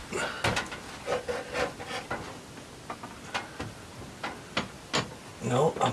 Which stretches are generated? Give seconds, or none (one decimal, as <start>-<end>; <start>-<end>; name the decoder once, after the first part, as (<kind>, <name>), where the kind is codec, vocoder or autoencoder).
none